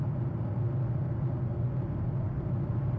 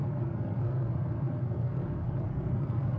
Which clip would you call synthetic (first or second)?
second